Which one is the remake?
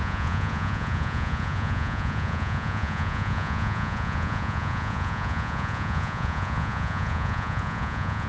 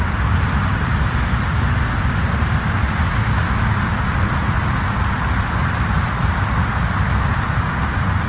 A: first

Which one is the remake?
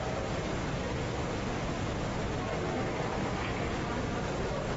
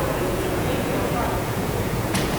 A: second